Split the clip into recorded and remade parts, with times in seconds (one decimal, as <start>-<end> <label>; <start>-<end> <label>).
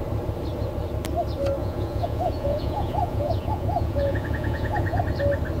0.0-1.6 recorded; 1.6-5.0 remade; 5.0-5.6 recorded